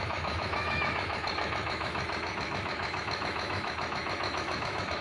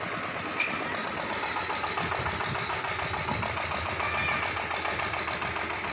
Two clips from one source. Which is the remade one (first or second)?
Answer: first